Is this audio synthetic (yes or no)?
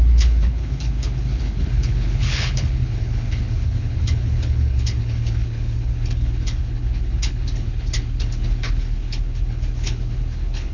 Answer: yes